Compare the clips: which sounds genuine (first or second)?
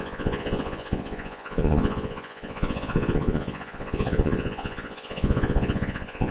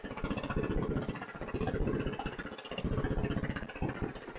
second